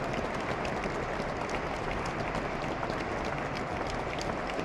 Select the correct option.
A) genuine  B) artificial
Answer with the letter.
A